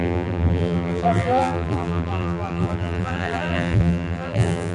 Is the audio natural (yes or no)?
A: no